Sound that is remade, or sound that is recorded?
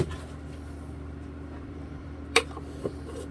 remade